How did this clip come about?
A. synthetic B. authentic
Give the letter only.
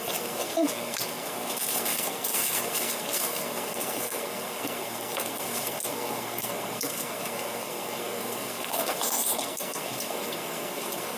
A